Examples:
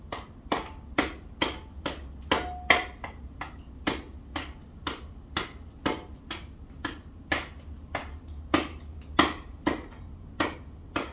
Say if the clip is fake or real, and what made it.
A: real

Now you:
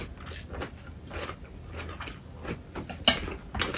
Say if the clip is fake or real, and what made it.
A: real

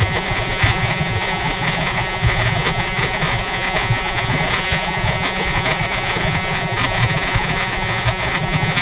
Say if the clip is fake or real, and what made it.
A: fake, vocoder, Vocos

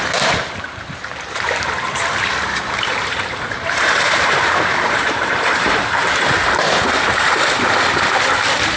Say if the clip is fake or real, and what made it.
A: fake, vocoder, BigVGAN v2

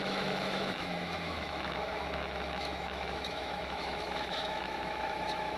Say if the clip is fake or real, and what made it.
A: fake, autoencoder, DAC-VAE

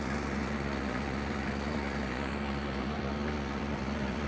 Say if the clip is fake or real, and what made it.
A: fake, vocoder, Vocos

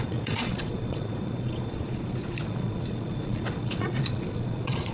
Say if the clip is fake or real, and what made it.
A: fake, vocoder, Vocos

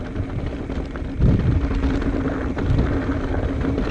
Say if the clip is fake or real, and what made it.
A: real